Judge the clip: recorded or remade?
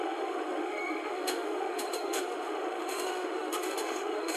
remade